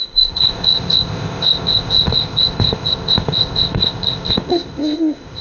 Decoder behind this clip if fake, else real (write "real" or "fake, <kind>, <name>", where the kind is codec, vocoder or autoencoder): fake, codec, ZipCodec